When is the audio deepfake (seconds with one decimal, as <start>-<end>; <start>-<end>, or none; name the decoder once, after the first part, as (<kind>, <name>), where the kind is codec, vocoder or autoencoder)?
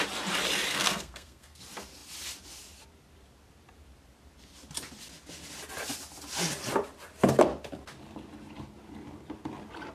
0.7-1.6 (codec, SNAC)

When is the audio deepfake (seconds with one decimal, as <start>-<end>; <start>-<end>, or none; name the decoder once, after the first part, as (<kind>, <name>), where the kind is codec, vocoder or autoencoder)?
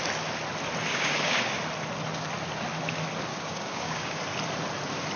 0.9-1.6 (codec, DAC); 3.3-4.2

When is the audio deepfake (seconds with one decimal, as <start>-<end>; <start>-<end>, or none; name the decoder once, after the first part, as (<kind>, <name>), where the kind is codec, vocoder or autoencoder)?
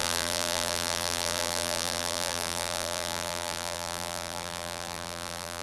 0.0-5.6 (vocoder, BigVGAN v2)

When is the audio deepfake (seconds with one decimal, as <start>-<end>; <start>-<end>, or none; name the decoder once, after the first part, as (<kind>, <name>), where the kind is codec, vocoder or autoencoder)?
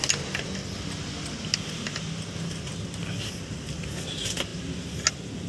none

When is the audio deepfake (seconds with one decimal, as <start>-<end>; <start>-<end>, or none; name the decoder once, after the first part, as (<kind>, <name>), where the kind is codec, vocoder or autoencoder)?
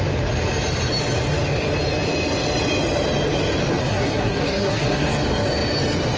3.8-5.1 (codec, SNAC)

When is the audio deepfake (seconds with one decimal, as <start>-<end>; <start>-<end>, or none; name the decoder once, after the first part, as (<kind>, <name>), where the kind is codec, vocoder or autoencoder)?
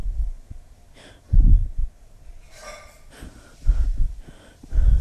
none